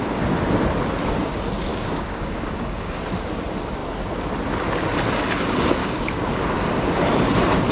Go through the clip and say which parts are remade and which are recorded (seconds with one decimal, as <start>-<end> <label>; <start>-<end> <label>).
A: 0.0-1.7 recorded; 1.7-3.0 remade; 3.0-5.8 recorded; 5.8-6.5 remade; 6.5-7.7 recorded